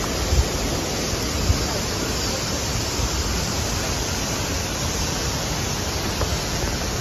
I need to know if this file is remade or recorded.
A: recorded